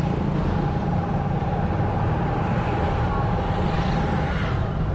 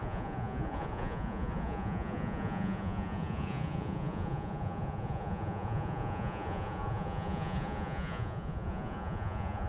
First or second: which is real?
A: first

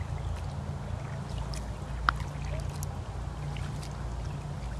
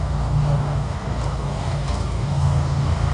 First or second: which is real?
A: first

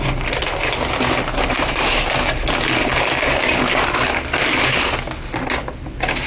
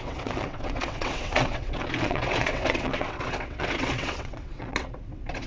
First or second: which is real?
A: first